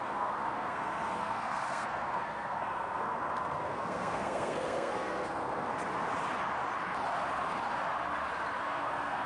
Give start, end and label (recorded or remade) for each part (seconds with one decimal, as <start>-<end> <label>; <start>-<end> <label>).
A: 0.0-5.7 remade; 5.7-8.6 recorded; 8.6-9.3 remade